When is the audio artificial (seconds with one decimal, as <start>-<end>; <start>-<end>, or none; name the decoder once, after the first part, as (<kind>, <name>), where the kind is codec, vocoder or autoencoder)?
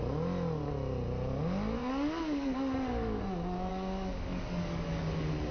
1.8-3.2 (codec, DAC); 3.7-5.1